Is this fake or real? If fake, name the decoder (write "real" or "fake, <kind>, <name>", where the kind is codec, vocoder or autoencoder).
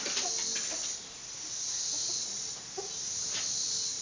real